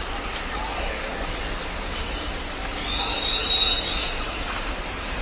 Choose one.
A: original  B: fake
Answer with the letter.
A